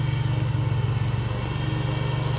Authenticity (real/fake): real